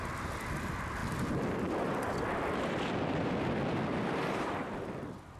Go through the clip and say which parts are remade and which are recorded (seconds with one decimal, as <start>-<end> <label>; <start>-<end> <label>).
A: 0.0-5.4 recorded